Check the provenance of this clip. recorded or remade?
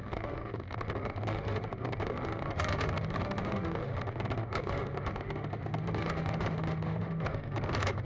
remade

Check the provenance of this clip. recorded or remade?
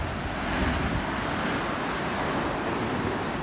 recorded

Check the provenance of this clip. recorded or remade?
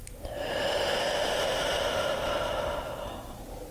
recorded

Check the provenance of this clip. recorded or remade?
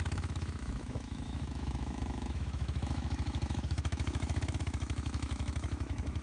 remade